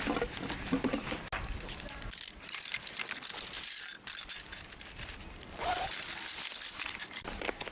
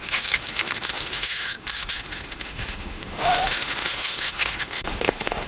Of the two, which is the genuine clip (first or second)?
first